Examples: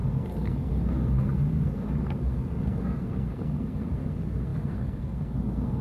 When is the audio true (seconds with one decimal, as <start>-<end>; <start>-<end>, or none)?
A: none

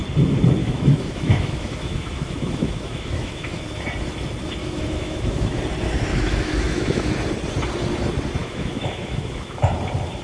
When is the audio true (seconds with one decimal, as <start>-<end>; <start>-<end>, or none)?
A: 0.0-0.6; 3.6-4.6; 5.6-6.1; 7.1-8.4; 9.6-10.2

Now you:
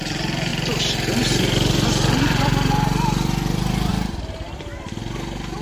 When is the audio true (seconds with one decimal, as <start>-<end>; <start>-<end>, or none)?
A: 0.0-0.5; 3.9-5.6

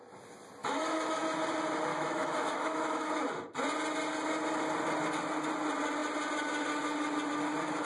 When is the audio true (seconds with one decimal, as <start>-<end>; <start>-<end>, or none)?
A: 0.0-0.6; 1.2-1.9; 3.2-7.9

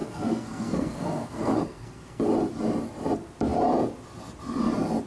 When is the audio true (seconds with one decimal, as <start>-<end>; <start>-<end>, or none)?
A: 2.2-5.1